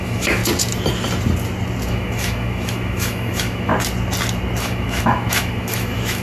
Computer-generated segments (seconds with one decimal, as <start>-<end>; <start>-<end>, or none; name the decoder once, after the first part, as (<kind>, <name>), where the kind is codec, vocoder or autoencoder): 0.0-0.4 (autoencoder, DAC-VAE); 1.9-3.7; 4.6-6.2